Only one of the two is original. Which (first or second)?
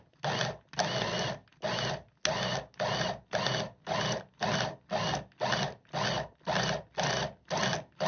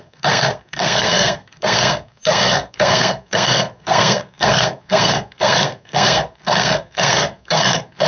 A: first